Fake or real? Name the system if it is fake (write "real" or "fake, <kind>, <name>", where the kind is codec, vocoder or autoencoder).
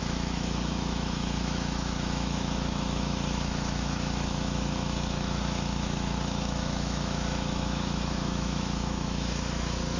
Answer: fake, autoencoder, DAC-VAE